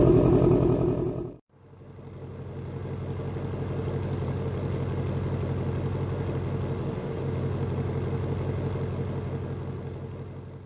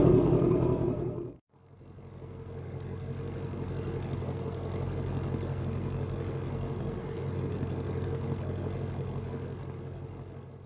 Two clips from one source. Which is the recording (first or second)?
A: first